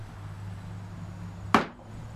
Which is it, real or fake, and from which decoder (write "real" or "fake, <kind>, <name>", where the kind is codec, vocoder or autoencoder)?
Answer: real